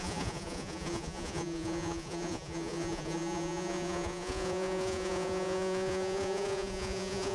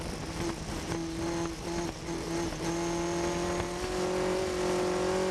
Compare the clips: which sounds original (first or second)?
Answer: second